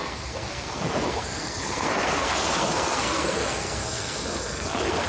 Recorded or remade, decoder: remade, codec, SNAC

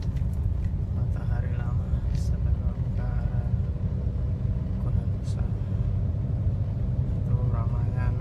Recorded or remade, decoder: recorded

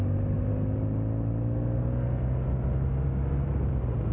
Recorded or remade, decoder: recorded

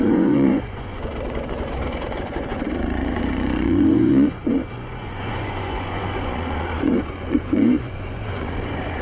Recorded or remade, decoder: remade, vocoder, Vocos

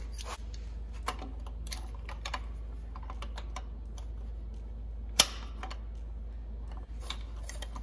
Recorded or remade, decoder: recorded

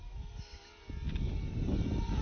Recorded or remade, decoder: recorded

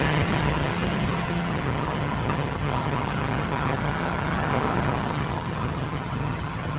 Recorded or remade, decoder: remade, vocoder, HiFi-GAN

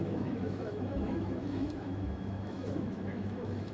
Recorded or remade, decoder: remade, autoencoder, DAC-VAE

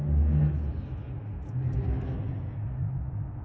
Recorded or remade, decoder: recorded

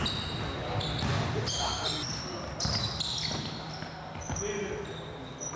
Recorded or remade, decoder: recorded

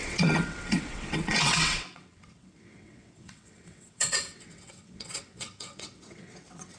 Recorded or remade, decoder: remade, vocoder, WaveNeXt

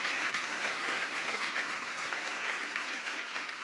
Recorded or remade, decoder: remade, codec, SNAC